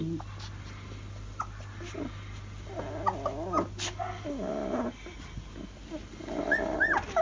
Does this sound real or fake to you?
real